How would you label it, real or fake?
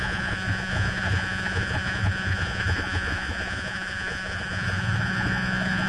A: fake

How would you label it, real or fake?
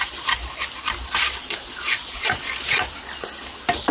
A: real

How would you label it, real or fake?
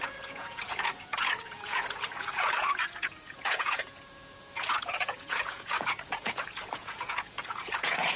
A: fake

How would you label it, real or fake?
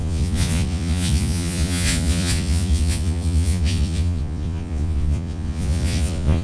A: fake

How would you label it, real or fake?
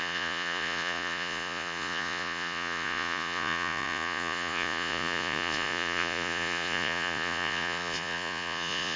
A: fake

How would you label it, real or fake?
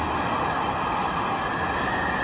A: real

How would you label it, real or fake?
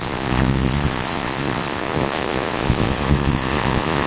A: fake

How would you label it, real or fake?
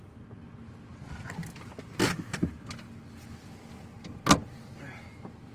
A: real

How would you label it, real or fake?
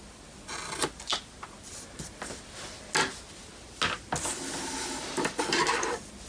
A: real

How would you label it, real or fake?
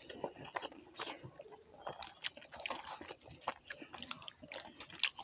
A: real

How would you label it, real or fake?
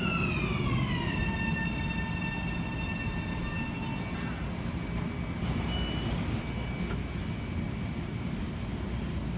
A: real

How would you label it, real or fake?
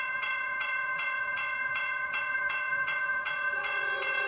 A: fake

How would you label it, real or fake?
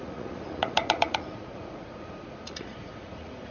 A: fake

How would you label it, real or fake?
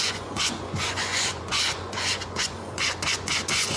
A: fake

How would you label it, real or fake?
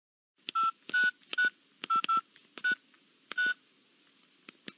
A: real